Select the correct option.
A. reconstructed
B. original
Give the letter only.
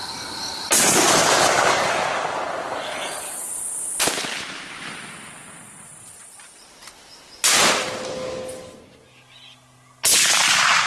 B